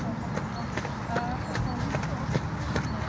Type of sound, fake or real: real